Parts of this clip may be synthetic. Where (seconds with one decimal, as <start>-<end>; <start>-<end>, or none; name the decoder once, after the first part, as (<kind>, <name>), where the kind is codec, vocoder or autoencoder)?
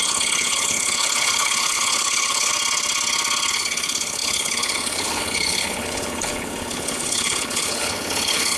0.0-2.5 (codec, HILCodec); 3.5-8.6